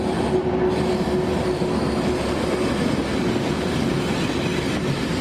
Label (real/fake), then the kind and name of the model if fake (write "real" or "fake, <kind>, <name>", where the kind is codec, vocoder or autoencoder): real